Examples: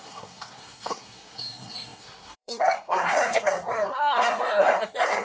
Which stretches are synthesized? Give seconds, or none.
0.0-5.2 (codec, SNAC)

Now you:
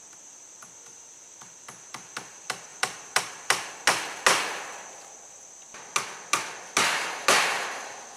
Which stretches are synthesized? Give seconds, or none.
0.9-2.1 (vocoder, BigVGAN v2); 2.7-3.7

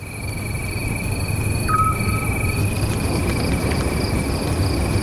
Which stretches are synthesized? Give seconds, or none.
none

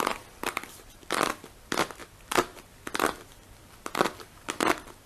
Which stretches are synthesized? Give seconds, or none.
none

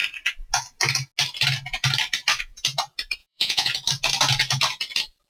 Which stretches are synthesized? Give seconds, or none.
3.2-3.7 (vocoder, Vocos)